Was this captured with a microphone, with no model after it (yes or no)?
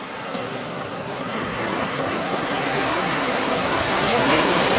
no